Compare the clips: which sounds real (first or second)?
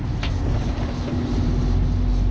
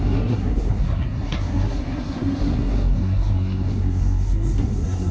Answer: first